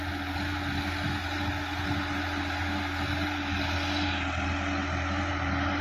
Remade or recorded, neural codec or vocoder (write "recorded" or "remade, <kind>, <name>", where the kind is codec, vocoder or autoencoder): recorded